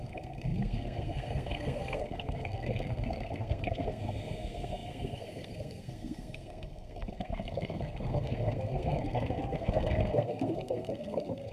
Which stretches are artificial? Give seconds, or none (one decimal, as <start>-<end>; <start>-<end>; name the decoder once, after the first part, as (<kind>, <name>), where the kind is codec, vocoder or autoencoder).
0.0-11.5 (codec, SNAC)